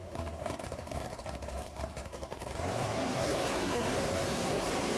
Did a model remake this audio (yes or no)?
yes